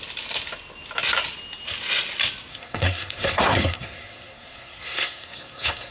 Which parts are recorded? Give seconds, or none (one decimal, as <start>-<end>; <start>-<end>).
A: 0.0-2.5